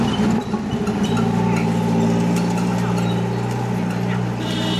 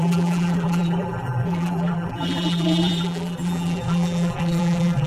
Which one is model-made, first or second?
second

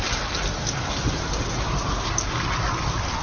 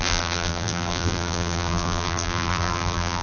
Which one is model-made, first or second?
second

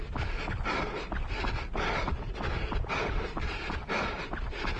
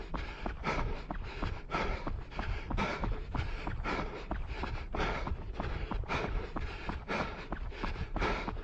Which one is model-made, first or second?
second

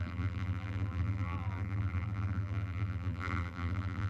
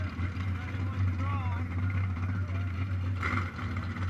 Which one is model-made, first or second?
first